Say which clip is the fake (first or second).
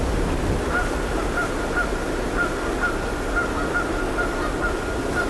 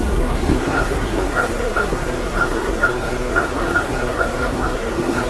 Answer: second